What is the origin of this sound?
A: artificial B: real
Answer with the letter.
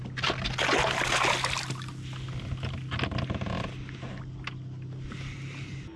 B